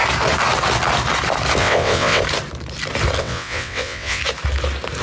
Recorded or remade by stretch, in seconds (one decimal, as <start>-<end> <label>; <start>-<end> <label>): 0.0-1.6 recorded; 1.6-2.2 remade; 2.2-3.2 recorded; 3.2-4.2 remade; 4.2-5.0 recorded